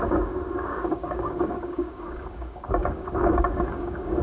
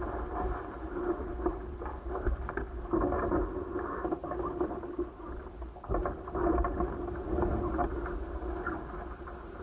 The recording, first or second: second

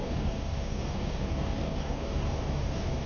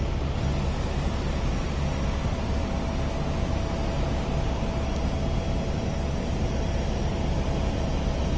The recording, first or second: second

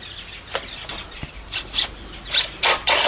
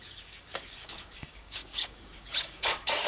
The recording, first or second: first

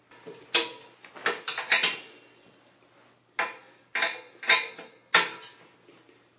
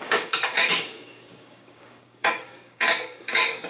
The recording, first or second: first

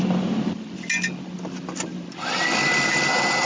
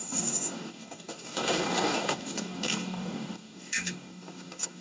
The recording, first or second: first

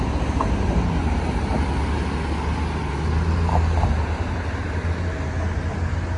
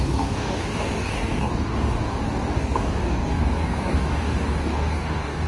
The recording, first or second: first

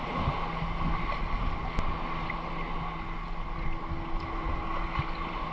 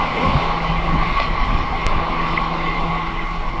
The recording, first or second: first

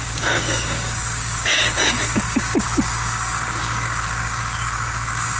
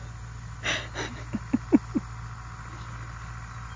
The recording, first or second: second